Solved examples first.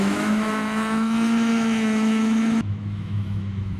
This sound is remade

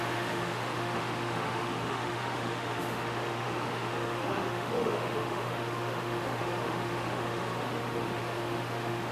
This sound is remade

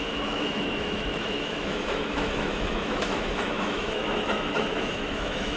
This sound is remade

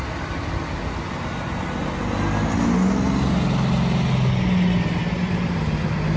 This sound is recorded